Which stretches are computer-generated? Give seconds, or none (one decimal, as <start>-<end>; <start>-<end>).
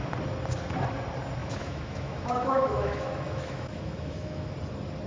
1.4-4.5